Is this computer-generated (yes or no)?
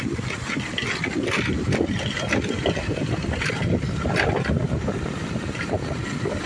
yes